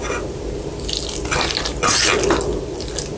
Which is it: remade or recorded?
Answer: recorded